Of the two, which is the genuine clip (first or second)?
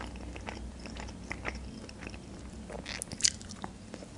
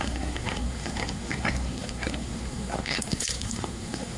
first